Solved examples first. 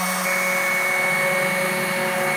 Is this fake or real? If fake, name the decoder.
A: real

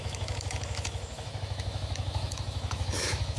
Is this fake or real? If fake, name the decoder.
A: fake, autoencoder, DAC-VAE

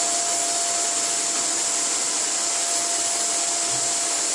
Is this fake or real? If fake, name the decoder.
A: real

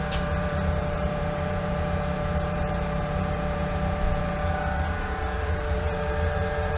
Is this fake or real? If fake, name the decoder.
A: fake, vocoder, BigVGAN v2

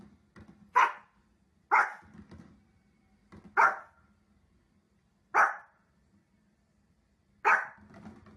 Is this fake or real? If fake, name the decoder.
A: real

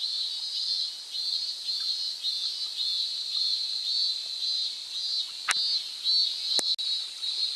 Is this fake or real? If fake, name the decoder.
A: real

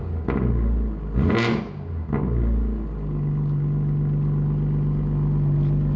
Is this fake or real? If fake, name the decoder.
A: real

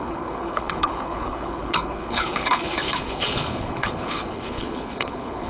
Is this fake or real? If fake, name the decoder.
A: fake, codec, HILCodec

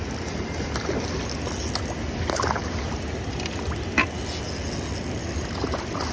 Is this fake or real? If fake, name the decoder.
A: real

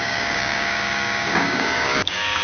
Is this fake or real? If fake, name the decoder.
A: fake, codec, DAC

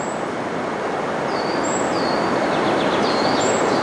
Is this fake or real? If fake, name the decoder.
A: real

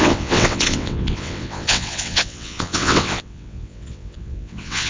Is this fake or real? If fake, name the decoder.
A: fake, vocoder, WaveNeXt